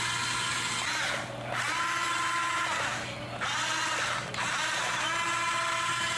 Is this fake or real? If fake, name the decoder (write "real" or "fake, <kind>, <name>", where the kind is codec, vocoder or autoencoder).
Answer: real